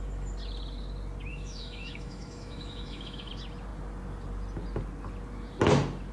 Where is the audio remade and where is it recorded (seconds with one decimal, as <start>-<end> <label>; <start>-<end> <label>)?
0.0-1.3 recorded; 1.3-3.3 remade; 3.3-6.1 recorded

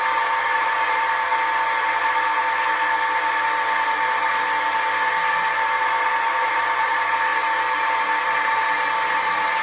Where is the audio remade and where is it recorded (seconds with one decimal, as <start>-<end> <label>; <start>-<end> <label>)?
0.0-1.3 remade; 1.3-5.8 recorded; 5.8-7.3 remade; 7.3-8.2 recorded; 8.2-9.6 remade